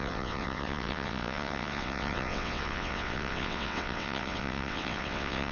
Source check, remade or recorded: remade